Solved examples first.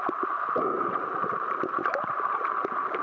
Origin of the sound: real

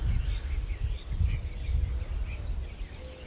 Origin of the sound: real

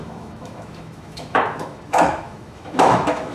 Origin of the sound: fake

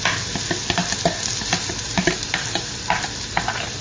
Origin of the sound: real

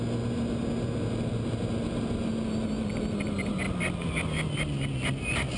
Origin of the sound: real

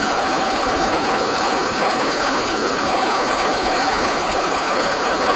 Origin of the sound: fake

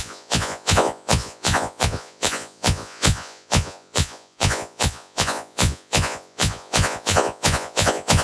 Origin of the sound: fake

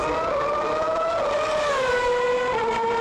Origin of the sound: real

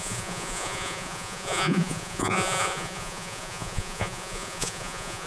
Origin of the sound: fake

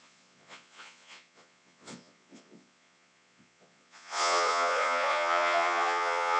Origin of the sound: fake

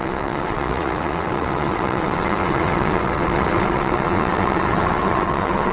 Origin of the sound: fake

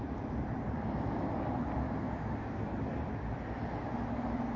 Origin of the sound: real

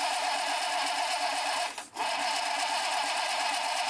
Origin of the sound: real